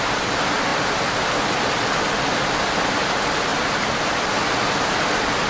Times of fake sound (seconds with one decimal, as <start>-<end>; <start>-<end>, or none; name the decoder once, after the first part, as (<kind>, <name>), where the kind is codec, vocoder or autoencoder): none